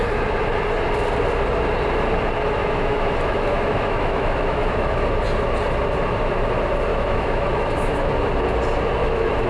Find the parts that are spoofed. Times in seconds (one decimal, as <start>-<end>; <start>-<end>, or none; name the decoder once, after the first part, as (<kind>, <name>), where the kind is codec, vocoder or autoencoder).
2.6-4.9 (autoencoder, DAC-VAE); 6.9-8.1; 9.0-9.5